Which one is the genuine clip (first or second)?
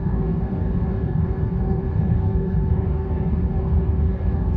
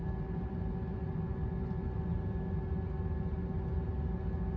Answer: second